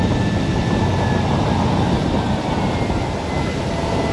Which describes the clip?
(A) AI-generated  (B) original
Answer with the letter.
B